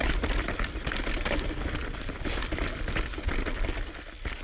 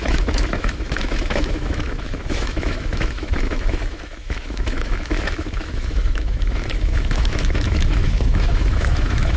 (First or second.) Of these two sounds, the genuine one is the first